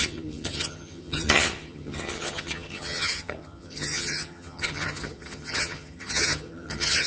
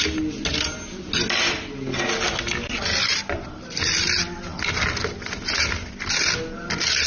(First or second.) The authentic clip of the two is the second